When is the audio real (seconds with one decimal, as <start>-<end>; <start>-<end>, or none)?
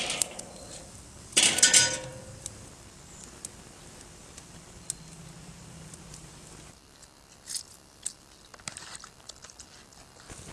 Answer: 0.0-10.5